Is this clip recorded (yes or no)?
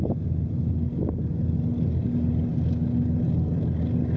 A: yes